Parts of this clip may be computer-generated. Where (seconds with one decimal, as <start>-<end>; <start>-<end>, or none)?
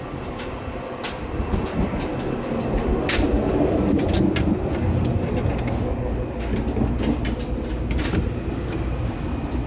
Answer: none